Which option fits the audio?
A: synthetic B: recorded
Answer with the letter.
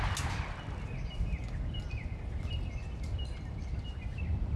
B